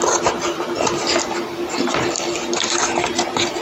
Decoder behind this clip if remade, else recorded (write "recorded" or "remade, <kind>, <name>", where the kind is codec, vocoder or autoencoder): recorded